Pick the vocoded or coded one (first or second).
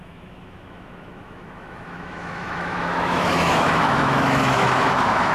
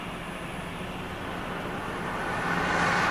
first